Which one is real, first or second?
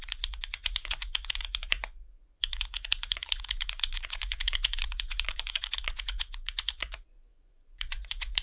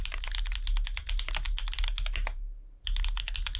second